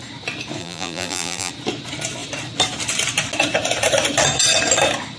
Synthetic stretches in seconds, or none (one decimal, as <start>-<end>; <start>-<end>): 0.6-1.5